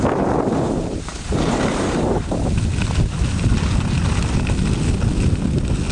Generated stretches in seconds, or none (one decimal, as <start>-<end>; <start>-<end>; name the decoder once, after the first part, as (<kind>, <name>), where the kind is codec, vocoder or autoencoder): 1.1-2.4 (vocoder, BigVGAN v2)